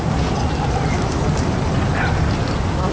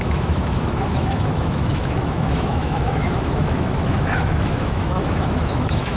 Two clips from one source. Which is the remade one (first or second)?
second